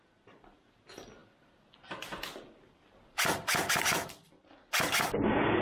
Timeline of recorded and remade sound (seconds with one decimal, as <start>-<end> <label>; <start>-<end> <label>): 0.0-5.6 recorded